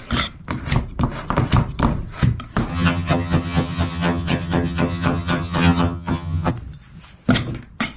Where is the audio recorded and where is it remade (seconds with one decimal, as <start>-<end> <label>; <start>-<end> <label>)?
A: 0.0-2.7 recorded; 2.7-6.5 remade; 6.5-8.0 recorded

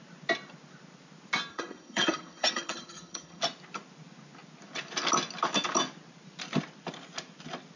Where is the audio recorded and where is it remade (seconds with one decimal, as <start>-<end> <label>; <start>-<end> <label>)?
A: 0.0-1.5 recorded; 1.5-3.4 remade; 3.4-7.8 recorded